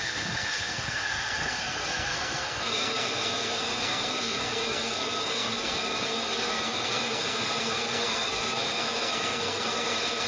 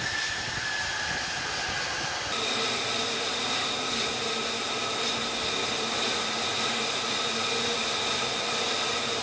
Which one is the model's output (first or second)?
first